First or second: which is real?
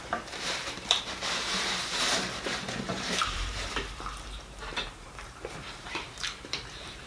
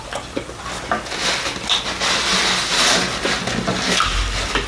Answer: second